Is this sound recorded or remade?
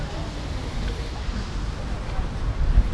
recorded